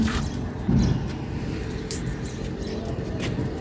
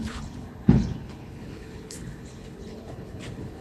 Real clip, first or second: first